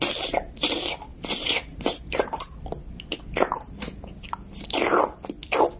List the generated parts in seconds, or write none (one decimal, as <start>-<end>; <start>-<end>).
1.1-2.5; 3.1-4.0